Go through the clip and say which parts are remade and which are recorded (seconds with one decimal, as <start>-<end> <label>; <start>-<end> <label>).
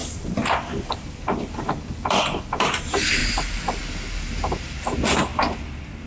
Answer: 0.0-3.2 remade; 3.2-3.8 recorded; 3.8-5.3 remade; 5.3-6.1 recorded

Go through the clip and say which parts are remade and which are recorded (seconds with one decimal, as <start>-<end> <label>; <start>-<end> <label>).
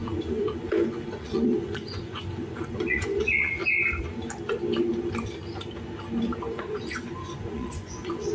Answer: 0.0-3.6 remade; 3.6-6.6 recorded; 6.6-8.3 remade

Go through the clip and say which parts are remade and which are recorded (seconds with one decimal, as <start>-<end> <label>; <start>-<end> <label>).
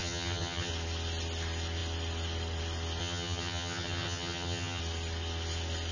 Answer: 0.0-0.7 remade; 0.7-3.0 recorded; 3.0-4.8 remade; 4.8-5.9 recorded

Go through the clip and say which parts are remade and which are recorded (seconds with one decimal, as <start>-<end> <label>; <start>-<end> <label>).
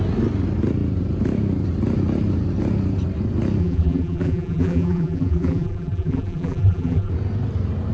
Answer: 0.0-3.6 recorded; 3.6-7.1 remade; 7.1-7.9 recorded